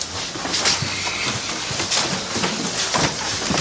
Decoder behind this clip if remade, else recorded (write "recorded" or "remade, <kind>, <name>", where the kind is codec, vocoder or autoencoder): recorded